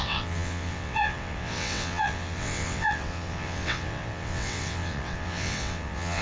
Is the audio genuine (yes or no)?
no